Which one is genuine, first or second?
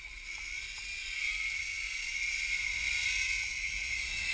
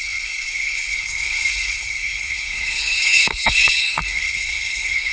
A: first